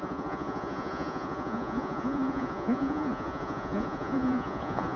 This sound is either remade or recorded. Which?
remade